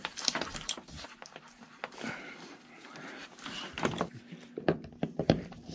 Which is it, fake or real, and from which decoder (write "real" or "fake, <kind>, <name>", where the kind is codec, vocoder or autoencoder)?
fake, vocoder, BigVGAN v2